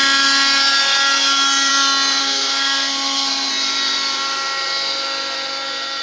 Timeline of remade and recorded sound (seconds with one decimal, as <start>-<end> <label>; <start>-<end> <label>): 0.0-2.2 recorded; 2.2-3.5 remade; 3.5-6.0 recorded